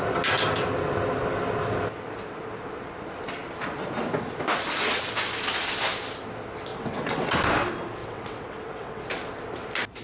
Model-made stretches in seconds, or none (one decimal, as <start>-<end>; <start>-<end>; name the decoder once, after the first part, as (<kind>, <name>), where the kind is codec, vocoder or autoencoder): 6.7-7.3 (vocoder, WaveNeXt); 8.0-9.0